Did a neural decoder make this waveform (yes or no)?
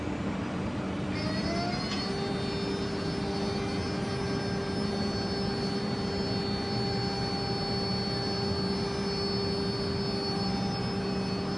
no